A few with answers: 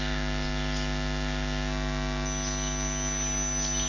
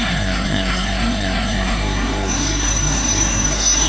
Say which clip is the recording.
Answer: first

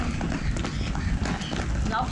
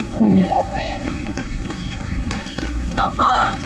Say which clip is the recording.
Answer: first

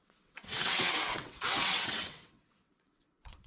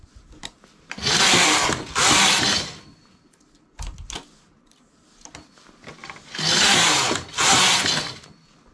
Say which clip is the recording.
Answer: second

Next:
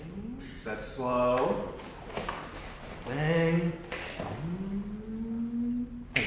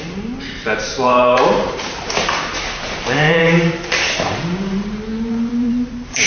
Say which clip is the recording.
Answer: first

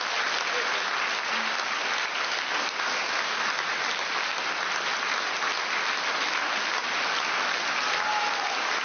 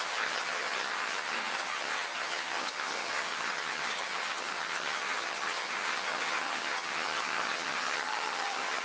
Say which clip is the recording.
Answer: first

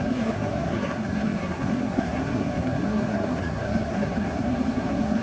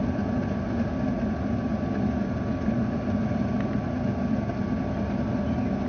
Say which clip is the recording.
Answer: second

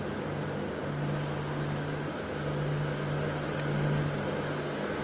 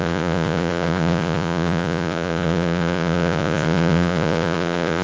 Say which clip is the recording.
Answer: first